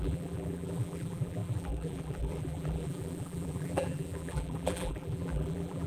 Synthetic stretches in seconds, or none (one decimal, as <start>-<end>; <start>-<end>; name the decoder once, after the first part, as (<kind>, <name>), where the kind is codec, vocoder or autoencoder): 0.0-5.9 (vocoder, BigVGAN v2)